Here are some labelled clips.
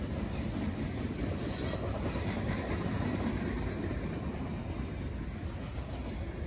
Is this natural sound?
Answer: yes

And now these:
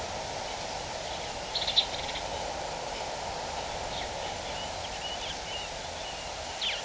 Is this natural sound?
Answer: yes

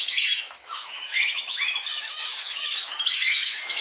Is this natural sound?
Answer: no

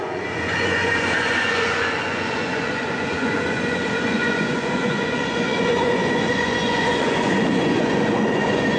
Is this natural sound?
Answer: no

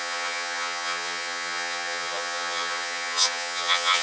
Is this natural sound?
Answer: no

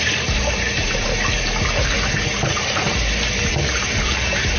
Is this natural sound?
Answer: no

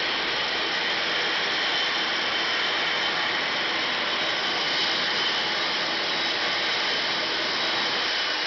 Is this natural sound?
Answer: yes